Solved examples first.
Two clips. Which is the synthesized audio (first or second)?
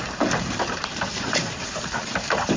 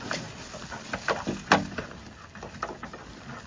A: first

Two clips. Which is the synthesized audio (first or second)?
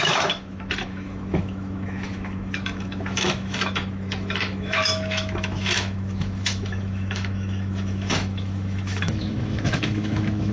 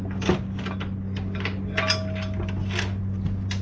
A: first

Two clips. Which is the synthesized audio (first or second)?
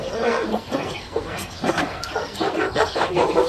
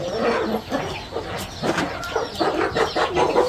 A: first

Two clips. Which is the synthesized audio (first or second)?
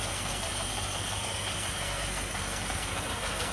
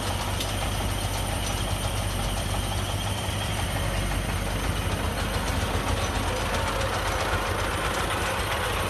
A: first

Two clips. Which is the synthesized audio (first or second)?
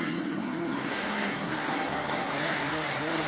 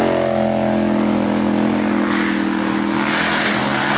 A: first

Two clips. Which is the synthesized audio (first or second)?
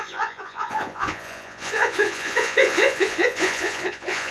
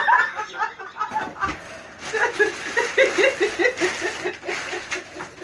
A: first